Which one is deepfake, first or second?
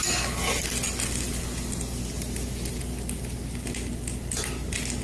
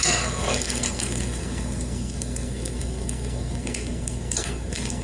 second